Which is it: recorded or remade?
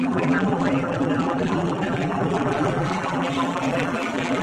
remade